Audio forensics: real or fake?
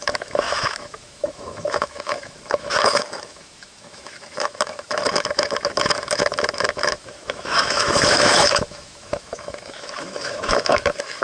fake